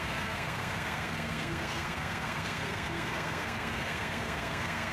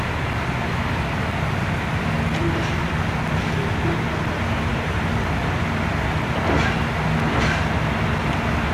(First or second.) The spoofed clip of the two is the first